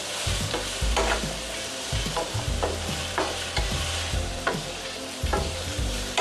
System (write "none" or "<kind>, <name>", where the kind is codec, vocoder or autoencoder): vocoder, BigVGAN v2